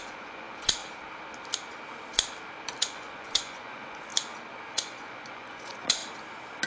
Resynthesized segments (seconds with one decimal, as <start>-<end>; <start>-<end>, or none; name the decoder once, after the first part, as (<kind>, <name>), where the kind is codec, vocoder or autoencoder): 0.0-0.8 (vocoder, Vocos); 2.8-4.1; 4.7-6.0